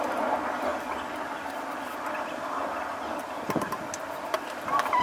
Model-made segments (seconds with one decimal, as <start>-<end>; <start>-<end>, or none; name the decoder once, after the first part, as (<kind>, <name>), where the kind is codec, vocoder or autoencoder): none